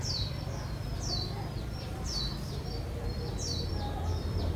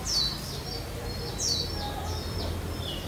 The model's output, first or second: first